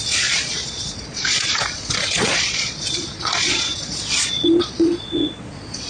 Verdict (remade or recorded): remade